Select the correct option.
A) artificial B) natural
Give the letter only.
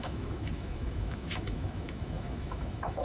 A